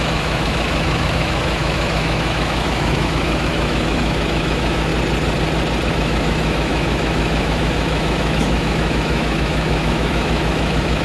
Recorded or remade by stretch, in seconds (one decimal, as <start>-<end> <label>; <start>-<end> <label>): 0.0-4.9 remade; 4.9-5.9 recorded; 5.9-11.0 remade